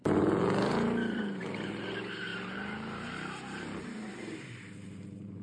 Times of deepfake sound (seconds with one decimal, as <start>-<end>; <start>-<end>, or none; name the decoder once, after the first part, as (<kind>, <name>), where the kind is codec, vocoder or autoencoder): 0.0-5.4 (vocoder, BigVGAN v2)